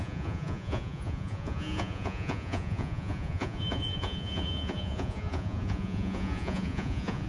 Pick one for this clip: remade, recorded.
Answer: remade